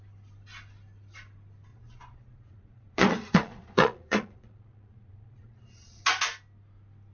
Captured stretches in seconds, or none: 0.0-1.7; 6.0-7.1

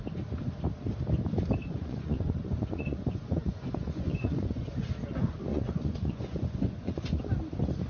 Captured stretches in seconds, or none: 0.0-1.6; 4.7-5.5; 7.2-7.9